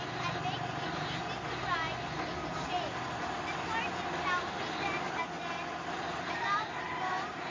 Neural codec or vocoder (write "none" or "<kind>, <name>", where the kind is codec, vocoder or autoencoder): none